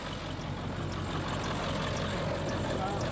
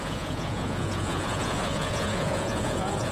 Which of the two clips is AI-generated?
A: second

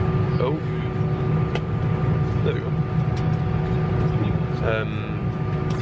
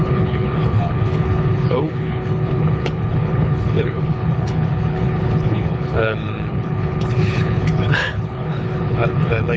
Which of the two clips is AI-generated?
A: second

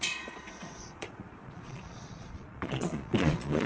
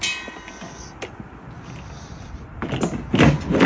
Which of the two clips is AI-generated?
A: first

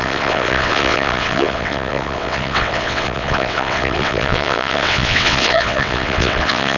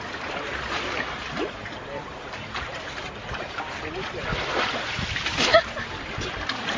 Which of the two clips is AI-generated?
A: first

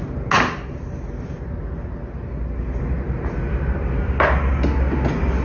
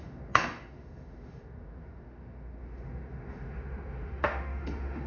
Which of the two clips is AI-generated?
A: second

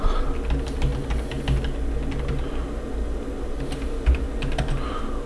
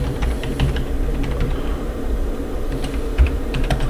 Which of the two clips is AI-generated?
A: second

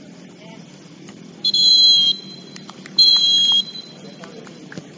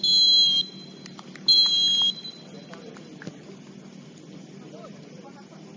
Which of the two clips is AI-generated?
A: first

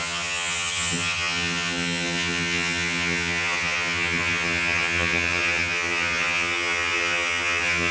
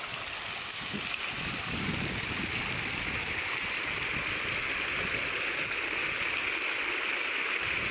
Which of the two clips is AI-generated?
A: first